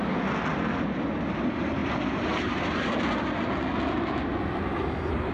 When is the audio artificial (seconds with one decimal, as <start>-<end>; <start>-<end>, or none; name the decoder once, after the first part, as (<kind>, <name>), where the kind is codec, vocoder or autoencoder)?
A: none